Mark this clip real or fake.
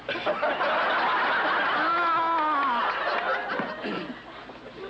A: real